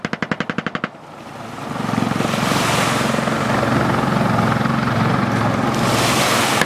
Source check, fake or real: real